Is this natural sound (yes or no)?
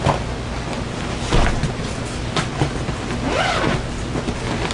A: yes